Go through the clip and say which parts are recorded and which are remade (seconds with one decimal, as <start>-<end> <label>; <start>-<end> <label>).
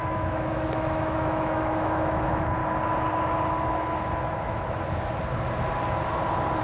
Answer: 0.0-2.6 remade; 2.6-6.6 recorded